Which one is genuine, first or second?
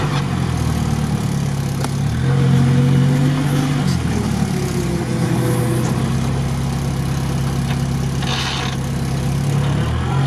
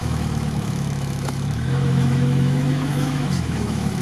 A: first